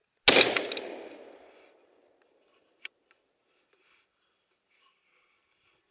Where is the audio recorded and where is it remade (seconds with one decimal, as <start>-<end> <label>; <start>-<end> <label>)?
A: 0.0-5.9 recorded